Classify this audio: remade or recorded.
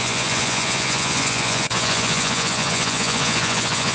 remade